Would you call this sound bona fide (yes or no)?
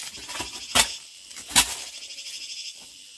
yes